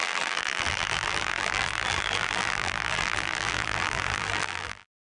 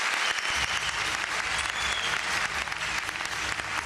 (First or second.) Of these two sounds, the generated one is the first